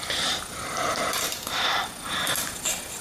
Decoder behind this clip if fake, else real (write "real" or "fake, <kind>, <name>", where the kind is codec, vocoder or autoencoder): real